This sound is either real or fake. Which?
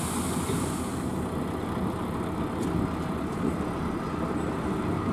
real